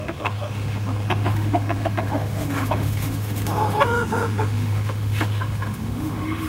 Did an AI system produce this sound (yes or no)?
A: yes